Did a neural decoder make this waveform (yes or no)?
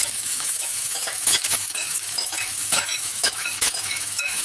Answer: yes